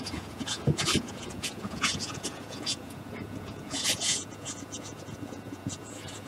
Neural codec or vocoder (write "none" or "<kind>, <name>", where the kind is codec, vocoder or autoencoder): vocoder, Vocos